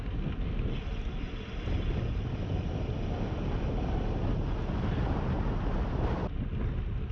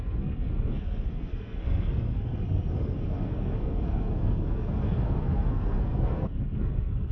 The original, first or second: first